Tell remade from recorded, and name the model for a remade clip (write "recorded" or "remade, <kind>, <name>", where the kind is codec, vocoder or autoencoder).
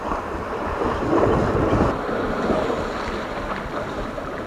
recorded